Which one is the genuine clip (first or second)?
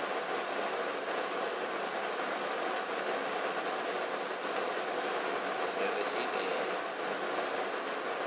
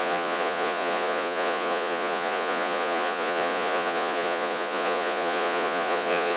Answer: first